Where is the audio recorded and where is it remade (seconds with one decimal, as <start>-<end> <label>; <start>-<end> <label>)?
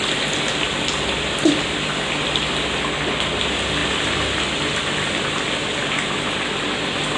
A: 0.0-7.2 recorded